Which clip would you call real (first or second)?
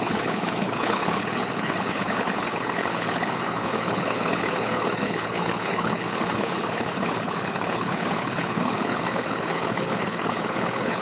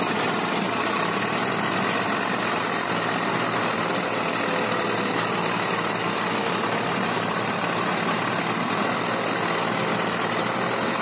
second